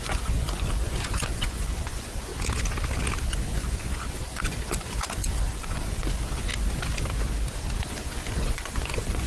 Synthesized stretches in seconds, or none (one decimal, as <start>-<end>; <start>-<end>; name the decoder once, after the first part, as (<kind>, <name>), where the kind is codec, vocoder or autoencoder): 0.0-2.3 (vocoder, Vocos); 3.2-6.5; 7.8-9.3